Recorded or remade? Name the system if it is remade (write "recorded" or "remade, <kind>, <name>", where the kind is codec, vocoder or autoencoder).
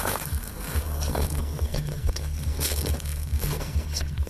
remade, codec, SNAC